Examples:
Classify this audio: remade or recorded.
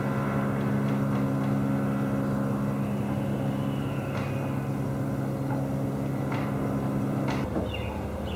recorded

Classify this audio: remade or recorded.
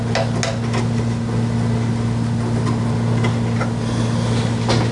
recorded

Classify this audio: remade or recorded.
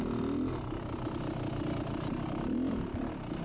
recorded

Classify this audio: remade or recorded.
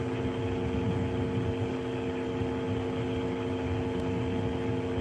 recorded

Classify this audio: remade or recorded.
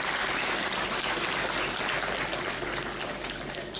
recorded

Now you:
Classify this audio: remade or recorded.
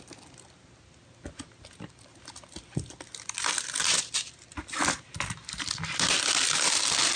recorded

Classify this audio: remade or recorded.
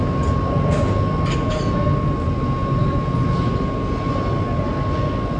recorded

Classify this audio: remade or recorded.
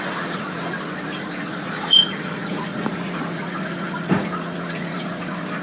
remade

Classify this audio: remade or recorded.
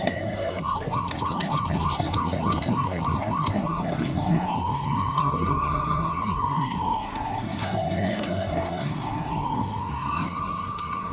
remade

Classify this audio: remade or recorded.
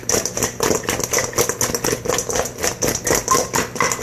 recorded